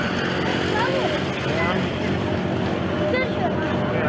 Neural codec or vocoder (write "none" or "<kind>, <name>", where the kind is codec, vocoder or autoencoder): none